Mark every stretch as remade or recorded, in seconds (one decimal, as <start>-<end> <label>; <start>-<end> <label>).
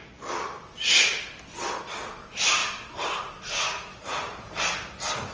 0.0-5.3 recorded